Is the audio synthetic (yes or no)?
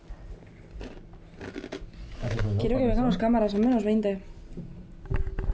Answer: no